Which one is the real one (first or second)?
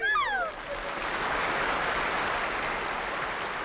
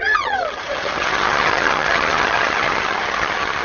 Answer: first